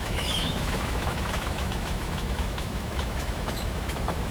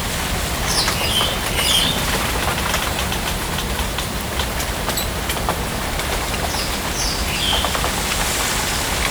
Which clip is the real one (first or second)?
second